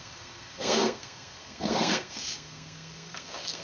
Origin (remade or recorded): remade